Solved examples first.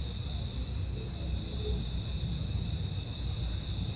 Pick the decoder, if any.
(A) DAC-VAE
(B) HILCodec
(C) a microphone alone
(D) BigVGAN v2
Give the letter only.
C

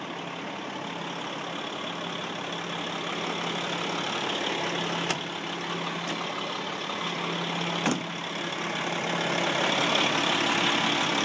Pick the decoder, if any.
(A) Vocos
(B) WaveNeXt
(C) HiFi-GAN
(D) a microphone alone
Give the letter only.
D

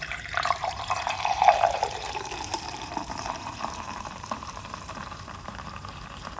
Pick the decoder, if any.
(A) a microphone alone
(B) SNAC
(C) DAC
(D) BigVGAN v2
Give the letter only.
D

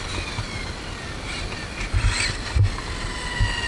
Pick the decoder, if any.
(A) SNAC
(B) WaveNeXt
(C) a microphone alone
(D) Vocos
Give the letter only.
C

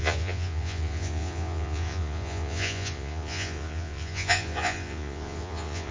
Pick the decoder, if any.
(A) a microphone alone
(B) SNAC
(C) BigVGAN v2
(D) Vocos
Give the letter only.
D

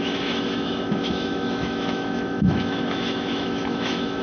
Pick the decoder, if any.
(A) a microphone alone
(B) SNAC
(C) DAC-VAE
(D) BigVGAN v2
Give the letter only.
C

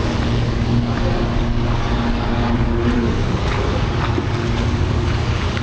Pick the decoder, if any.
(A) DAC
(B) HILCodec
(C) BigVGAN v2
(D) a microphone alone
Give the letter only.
A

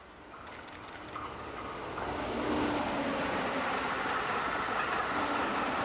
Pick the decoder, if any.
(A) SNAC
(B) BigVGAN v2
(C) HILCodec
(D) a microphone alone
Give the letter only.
D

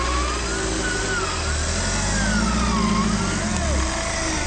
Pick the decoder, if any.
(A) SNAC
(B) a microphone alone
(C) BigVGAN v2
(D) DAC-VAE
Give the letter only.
B